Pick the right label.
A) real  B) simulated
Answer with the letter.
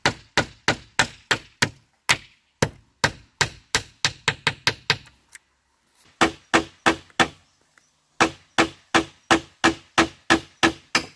A